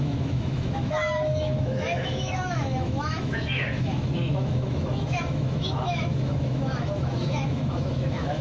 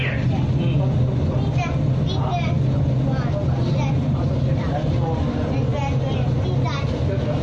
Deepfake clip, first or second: first